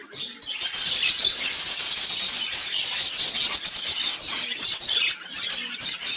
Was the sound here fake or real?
real